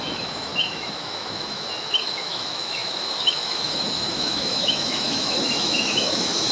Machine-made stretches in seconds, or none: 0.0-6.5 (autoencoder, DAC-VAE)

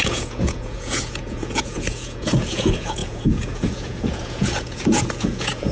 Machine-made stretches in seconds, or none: 0.0-5.7 (vocoder, Vocos)